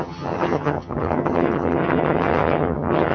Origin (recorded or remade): remade